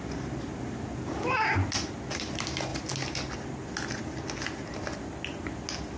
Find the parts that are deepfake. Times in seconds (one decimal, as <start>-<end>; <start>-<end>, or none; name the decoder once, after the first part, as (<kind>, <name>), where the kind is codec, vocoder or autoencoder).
none